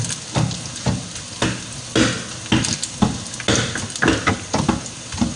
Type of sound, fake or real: real